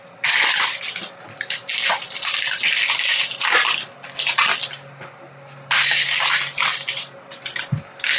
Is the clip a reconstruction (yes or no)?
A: no